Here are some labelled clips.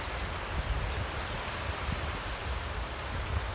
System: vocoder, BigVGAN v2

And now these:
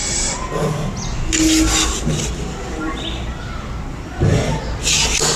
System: none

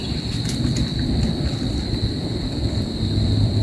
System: vocoder, BigVGAN v2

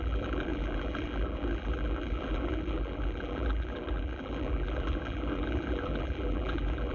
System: vocoder, BigVGAN v2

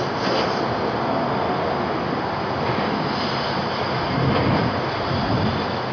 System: none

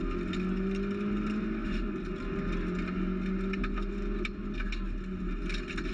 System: none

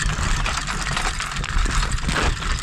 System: none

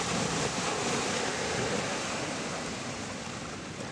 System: vocoder, BigVGAN v2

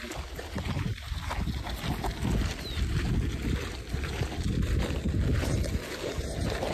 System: none